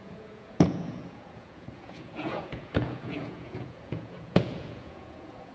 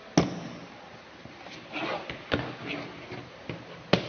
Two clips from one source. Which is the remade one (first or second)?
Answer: first